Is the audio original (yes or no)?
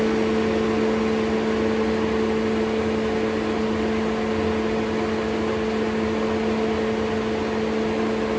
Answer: yes